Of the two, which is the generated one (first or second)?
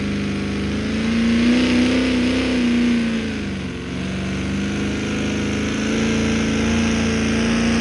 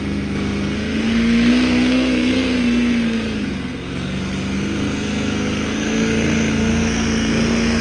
second